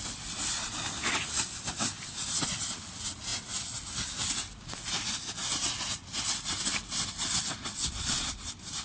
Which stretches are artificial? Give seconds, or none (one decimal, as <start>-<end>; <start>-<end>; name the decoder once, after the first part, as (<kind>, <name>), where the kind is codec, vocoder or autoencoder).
none